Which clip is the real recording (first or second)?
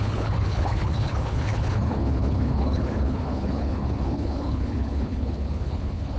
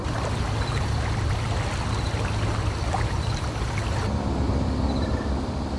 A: second